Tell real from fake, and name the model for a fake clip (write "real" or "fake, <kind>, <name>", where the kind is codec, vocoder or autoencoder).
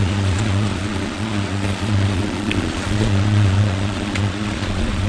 fake, vocoder, Vocos